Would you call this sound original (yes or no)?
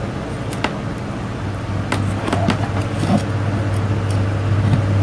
yes